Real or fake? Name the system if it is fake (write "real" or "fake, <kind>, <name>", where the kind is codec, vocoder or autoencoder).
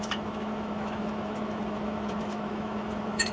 fake, autoencoder, DAC-VAE